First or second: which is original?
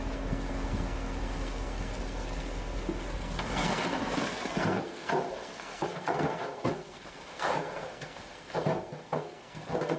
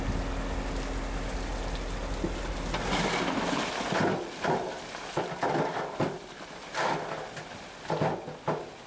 second